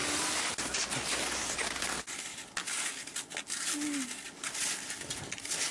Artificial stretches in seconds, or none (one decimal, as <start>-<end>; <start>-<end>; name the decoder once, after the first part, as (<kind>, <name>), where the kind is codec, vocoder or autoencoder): none